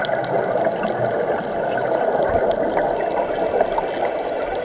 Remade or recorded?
recorded